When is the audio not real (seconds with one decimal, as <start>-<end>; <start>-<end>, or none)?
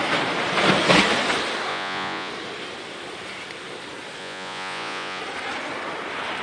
1.7-2.3; 4.2-5.2